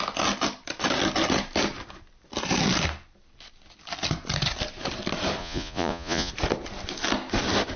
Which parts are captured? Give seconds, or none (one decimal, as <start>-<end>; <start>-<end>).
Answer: 0.0-5.4; 6.3-7.8